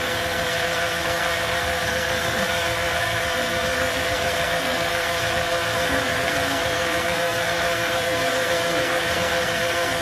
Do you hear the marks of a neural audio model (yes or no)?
yes